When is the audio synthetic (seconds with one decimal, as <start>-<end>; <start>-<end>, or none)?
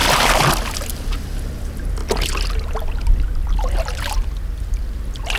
none